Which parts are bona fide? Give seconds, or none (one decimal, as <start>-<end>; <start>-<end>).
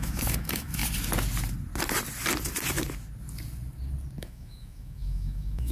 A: 0.8-4.2